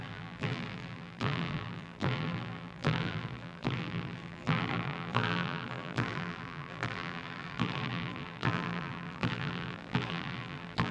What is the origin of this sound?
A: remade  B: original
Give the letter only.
A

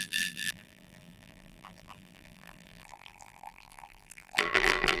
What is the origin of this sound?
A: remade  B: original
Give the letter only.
A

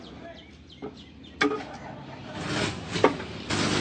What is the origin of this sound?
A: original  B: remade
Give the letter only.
A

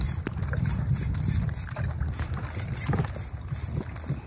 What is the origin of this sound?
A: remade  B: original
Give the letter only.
B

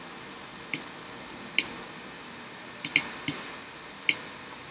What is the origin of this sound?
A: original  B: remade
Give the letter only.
A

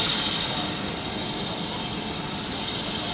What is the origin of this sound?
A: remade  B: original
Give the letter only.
B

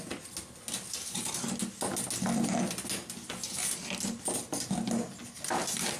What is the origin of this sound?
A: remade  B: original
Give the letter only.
B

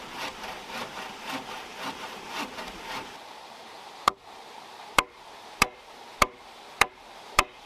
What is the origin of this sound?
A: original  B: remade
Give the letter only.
B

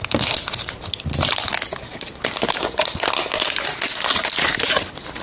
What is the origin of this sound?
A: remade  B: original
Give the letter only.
B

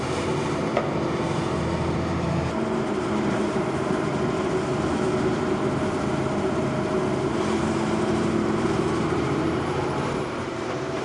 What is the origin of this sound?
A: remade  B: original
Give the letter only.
A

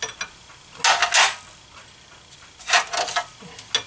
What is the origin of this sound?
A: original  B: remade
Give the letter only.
A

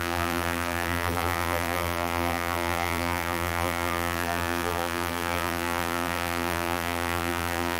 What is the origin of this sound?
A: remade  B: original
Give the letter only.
A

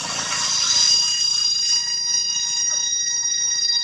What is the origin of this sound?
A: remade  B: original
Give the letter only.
B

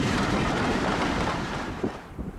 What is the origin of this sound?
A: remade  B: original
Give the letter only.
A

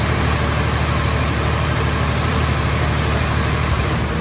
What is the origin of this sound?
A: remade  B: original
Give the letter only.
A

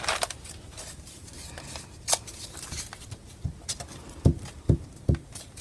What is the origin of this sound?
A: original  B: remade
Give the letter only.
A